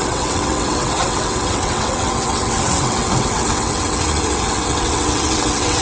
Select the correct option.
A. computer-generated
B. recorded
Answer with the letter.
A